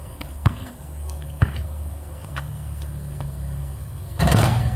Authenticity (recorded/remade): remade